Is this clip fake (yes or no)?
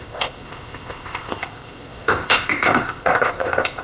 yes